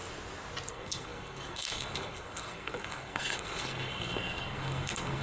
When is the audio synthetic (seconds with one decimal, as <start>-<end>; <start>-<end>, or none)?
0.7-5.2